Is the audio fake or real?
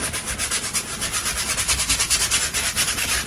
real